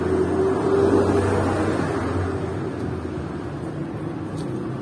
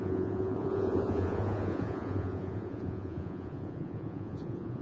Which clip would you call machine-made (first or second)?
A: second